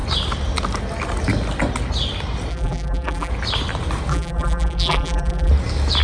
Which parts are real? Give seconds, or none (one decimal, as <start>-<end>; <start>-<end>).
0.0-2.5; 3.3-4.1; 5.5-6.0